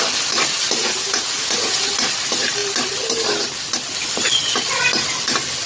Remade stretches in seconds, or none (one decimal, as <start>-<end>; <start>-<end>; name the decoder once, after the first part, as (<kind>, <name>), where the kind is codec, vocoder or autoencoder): 0.8-1.9 (vocoder, Vocos)